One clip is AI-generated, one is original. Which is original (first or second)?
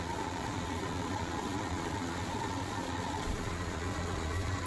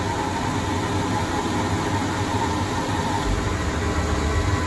second